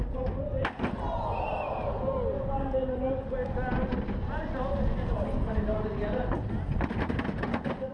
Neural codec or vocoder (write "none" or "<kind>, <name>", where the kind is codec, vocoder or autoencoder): none